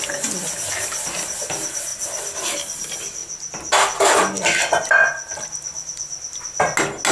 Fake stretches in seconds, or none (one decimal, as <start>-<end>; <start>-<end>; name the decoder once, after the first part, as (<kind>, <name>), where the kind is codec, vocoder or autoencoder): none